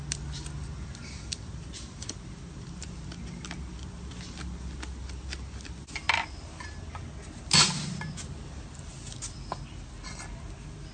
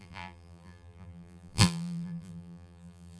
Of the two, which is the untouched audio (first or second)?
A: first